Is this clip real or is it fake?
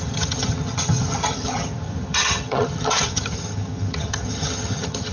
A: fake